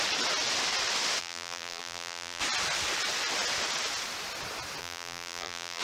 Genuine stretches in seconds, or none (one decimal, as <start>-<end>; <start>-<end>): 0.0-1.2; 2.4-4.8